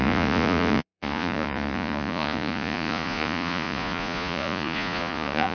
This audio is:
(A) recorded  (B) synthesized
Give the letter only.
B